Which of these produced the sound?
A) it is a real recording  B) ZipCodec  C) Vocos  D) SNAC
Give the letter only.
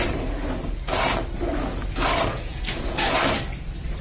A